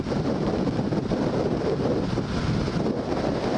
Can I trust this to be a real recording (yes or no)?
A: yes